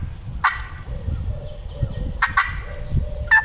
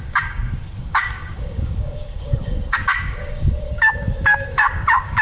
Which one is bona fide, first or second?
first